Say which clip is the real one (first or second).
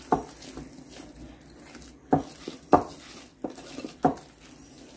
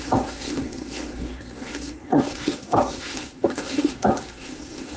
first